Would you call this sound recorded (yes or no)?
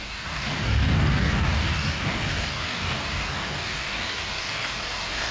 no